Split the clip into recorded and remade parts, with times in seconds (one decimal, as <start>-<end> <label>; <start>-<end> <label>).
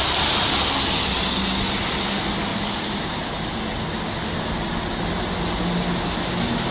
0.0-6.7 recorded